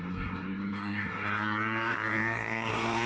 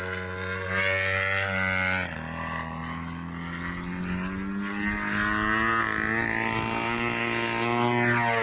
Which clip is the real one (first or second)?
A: second